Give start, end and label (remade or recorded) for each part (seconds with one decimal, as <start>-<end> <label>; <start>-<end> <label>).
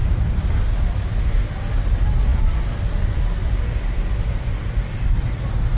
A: 0.0-5.8 recorded